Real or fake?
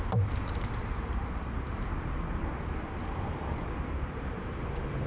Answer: fake